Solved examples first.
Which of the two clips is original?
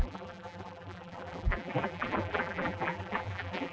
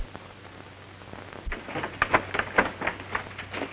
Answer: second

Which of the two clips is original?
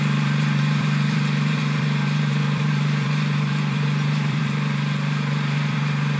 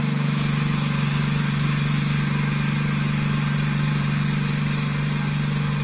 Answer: second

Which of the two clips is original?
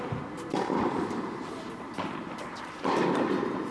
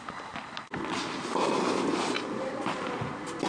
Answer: second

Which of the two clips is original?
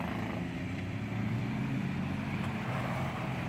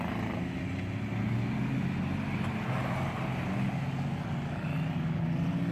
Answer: second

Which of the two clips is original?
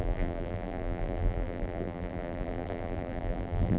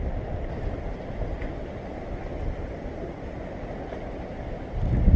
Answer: second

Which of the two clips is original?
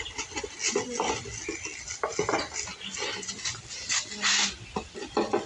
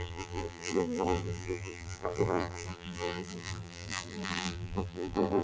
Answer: first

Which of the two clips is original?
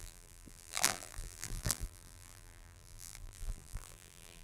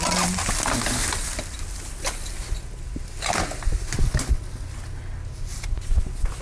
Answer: second